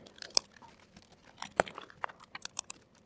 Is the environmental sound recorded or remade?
recorded